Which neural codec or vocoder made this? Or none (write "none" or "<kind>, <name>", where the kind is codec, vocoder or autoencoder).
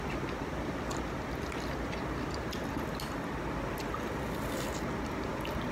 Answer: none